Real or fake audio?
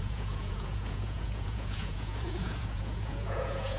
fake